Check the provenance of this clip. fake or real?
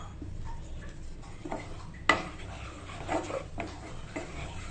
real